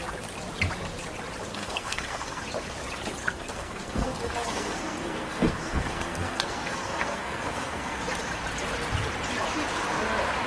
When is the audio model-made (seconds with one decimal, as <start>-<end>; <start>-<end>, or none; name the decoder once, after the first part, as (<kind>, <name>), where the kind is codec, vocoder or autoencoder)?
1.5-2.4 (codec, SNAC); 3.2-8.0